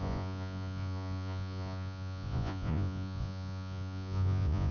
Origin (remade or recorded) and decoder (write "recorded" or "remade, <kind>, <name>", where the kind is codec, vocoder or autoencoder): remade, vocoder, Vocos